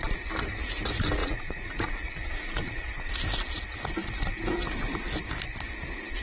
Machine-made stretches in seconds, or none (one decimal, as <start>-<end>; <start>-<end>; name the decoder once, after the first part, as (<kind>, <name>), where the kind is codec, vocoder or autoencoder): 1.2-3.1 (vocoder, Vocos)